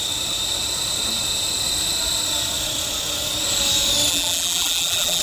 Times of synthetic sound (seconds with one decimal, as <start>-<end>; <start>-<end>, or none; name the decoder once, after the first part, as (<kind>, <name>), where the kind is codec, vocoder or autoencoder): 4.1-5.2 (vocoder, BigVGAN v2)